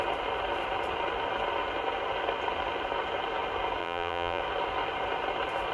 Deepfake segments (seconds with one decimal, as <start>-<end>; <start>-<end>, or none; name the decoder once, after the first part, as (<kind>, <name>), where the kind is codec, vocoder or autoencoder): 3.8-4.4 (vocoder, BigVGAN v2)